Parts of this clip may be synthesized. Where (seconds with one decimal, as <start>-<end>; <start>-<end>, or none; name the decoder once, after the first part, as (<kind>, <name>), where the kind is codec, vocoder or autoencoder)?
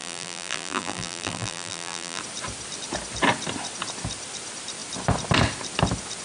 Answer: 0.0-2.2 (vocoder, BigVGAN v2)